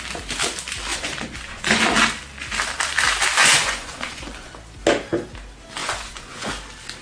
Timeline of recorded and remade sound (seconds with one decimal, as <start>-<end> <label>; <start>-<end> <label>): 0.0-0.9 recorded; 0.9-1.8 remade; 1.8-3.4 recorded; 3.4-4.5 remade; 4.5-5.8 recorded; 5.8-6.5 remade; 6.5-7.0 recorded